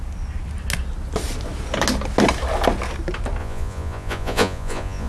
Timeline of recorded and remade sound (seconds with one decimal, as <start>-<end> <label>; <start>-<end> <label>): 0.0-3.4 recorded; 3.4-5.1 remade